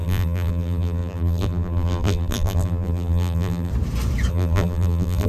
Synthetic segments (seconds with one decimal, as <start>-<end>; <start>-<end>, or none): 0.0-3.7; 4.3-5.3